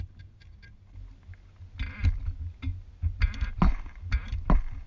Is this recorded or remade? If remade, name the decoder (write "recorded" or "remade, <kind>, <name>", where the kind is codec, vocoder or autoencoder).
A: recorded